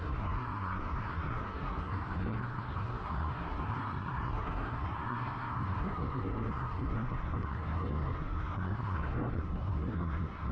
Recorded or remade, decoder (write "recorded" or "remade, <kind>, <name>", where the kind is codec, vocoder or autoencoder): remade, codec, SNAC